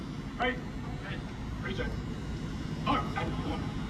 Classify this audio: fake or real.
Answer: real